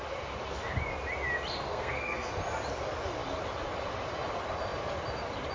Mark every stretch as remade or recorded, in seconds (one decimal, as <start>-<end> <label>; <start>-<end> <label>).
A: 0.0-1.7 recorded; 1.7-2.3 remade; 2.3-5.5 recorded